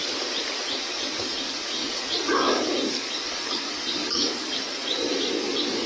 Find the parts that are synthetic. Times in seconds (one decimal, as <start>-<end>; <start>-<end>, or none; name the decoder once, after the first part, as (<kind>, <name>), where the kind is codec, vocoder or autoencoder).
0.9-5.9 (codec, DAC)